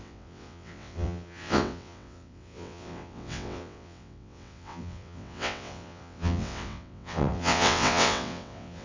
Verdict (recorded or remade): remade